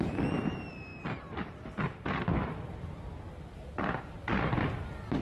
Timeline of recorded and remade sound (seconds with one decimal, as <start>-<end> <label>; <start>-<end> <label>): 0.0-5.2 recorded